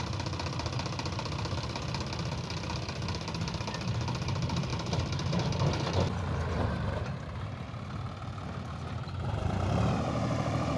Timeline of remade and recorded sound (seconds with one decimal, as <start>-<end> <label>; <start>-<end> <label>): 0.0-10.8 remade